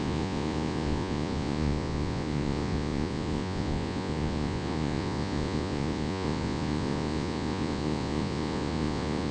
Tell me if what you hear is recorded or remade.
remade